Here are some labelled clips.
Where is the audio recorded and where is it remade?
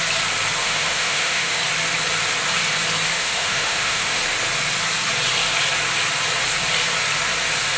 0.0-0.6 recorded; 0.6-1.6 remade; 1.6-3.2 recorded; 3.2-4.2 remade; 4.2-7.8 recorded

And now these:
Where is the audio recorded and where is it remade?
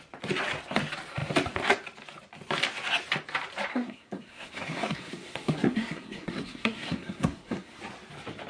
0.0-3.7 recorded; 3.7-7.8 remade; 7.8-8.5 recorded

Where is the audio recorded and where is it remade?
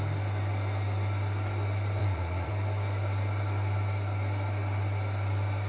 0.0-2.0 recorded; 2.0-2.5 remade; 2.5-5.7 recorded